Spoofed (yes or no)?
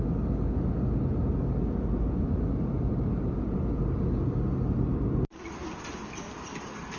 no